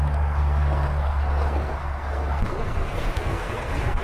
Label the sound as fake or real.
fake